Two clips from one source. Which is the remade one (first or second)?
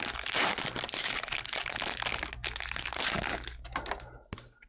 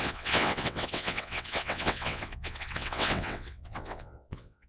second